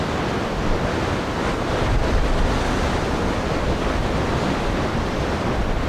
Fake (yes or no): no